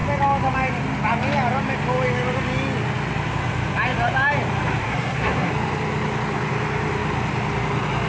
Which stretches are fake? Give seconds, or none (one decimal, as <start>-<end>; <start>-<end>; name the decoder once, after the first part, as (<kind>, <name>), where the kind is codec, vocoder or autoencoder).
4.8-5.5 (codec, SNAC)